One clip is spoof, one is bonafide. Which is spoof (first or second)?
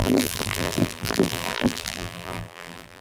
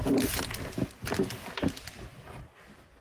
first